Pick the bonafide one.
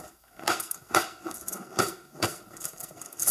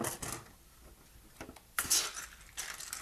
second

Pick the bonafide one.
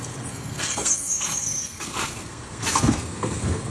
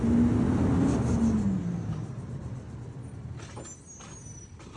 second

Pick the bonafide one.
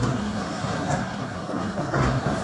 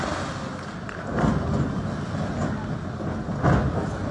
second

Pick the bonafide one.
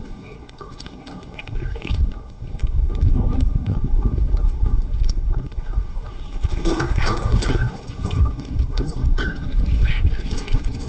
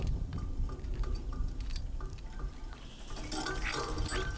second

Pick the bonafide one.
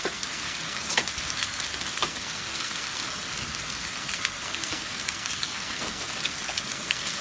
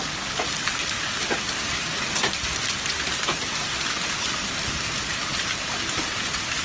second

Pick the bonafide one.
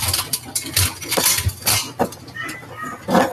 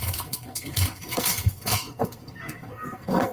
first